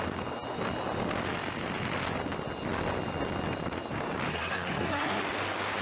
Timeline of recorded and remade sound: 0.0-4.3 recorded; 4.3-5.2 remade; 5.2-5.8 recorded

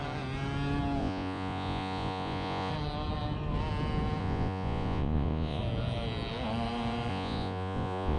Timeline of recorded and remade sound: 0.0-1.0 recorded; 1.0-2.7 remade; 2.7-4.2 recorded; 4.2-5.6 remade; 5.6-7.1 recorded; 7.1-8.2 remade